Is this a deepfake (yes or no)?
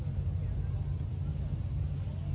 no